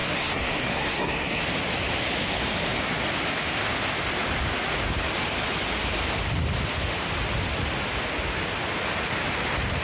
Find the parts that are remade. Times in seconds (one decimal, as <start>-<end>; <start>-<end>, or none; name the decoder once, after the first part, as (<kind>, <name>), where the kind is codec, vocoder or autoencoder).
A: 0.0-1.4 (codec, SNAC)